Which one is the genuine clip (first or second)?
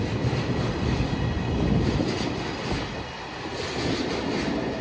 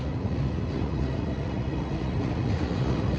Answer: first